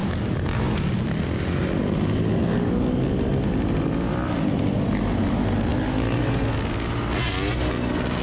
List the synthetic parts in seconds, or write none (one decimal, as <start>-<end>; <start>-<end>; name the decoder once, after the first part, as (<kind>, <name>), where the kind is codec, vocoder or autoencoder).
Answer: none

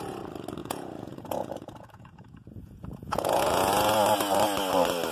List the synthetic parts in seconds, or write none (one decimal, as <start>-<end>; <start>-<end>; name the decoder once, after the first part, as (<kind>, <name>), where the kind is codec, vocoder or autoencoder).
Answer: 0.6-3.7 (vocoder, Vocos)

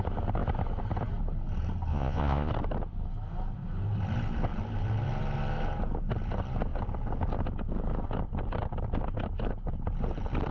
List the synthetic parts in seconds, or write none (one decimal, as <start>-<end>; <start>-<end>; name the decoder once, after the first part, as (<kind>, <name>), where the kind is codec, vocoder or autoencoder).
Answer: 1.9-2.5 (vocoder, Vocos)